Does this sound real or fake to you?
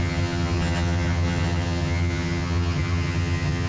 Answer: fake